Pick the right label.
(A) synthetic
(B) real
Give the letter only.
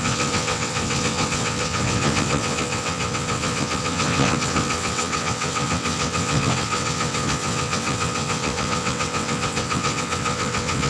A